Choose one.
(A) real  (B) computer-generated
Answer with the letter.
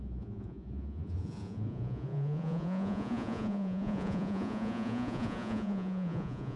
B